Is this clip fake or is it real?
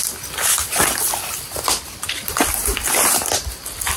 real